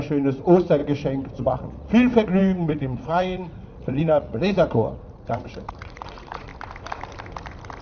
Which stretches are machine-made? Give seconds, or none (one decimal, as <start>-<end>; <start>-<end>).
0.0-0.8; 1.4-6.5